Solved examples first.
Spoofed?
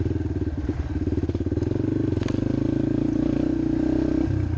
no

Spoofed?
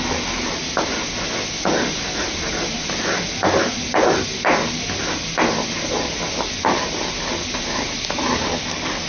no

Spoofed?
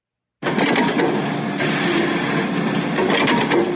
no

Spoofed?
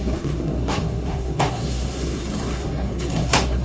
yes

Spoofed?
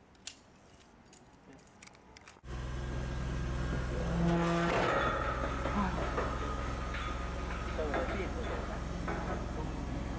no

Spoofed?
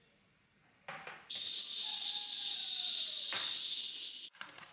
no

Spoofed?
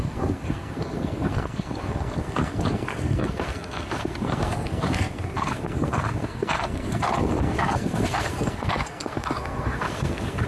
yes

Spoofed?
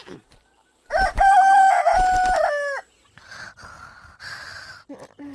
no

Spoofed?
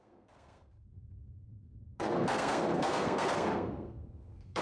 yes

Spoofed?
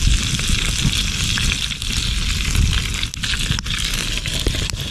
no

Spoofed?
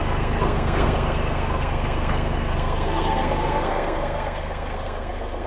yes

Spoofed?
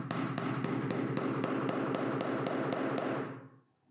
no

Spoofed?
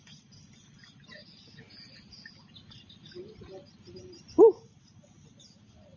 no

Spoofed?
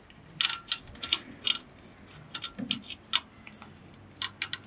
no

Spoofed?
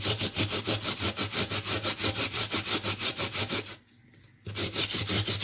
no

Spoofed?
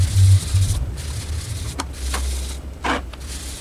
no